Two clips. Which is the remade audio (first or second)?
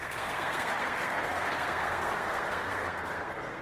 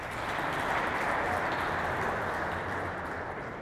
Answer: first